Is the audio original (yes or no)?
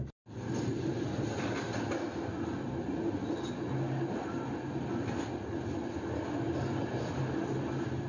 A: yes